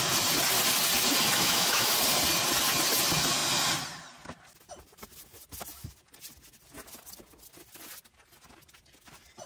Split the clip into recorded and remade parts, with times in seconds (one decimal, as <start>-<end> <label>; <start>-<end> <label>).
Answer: 0.0-1.3 recorded; 1.3-1.9 remade; 1.9-9.5 recorded